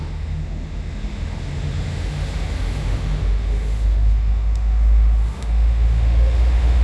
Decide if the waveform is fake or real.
fake